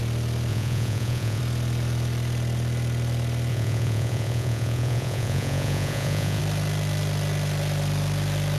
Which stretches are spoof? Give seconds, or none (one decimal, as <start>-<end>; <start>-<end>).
0.5-1.4; 3.5-6.4

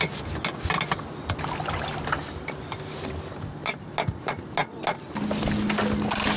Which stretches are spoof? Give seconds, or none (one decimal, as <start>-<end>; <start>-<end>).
none

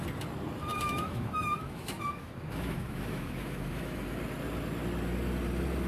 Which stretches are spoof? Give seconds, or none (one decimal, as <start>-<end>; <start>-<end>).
0.7-4.2

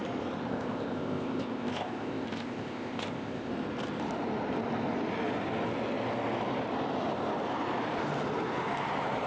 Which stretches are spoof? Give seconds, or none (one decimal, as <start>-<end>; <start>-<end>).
0.5-3.5

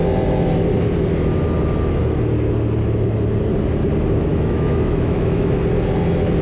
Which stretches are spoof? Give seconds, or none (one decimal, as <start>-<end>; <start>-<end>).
4.3-5.6